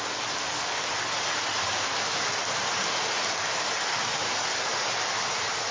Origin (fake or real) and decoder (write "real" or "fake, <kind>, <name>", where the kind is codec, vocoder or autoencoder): real